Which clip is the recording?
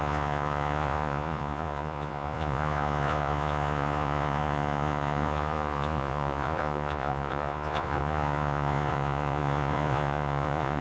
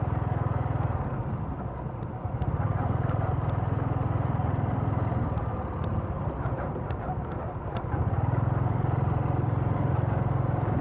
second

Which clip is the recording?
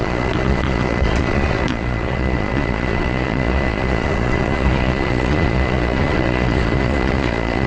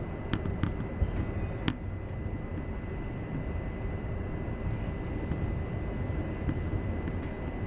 second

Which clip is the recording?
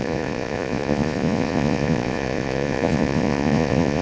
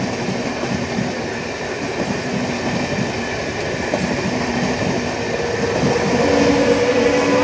second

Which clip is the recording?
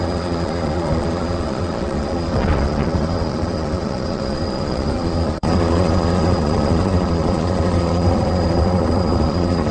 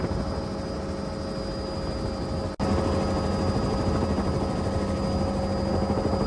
second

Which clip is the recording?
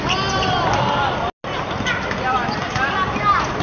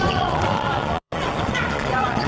first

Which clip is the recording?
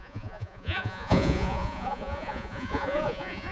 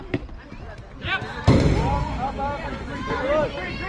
second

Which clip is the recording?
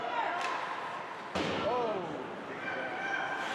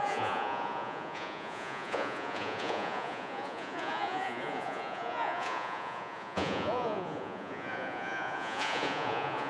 first